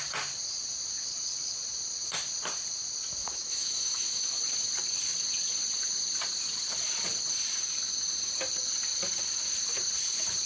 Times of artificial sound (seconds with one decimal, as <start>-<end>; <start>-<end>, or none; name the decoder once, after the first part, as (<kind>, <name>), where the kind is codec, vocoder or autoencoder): 3.2-4.4 (autoencoder, DAC-VAE)